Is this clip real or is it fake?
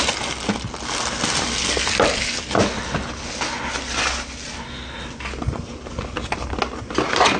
real